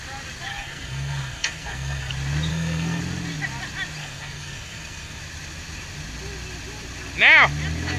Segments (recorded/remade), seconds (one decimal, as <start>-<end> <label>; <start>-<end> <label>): 0.0-0.5 recorded; 0.5-2.1 remade; 2.1-2.5 recorded; 2.5-3.0 remade; 3.0-4.0 recorded; 4.0-5.2 remade; 5.2-8.0 recorded